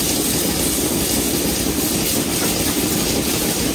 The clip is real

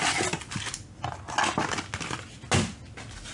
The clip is real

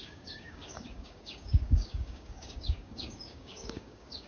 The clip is fake